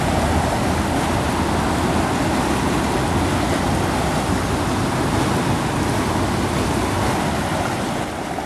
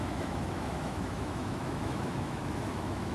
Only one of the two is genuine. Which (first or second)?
first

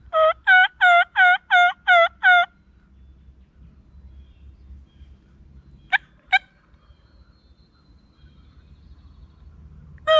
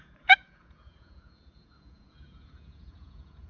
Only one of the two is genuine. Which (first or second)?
first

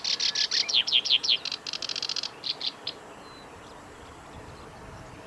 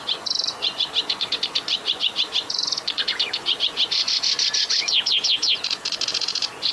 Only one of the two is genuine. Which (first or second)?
first